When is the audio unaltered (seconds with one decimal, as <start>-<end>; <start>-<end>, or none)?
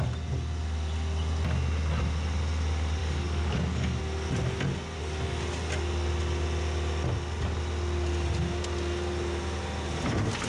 0.0-3.0; 4.0-10.5